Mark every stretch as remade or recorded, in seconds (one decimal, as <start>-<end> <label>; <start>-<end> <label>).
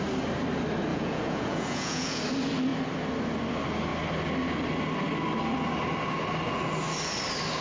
0.0-0.9 recorded; 0.9-2.2 remade; 2.2-7.6 recorded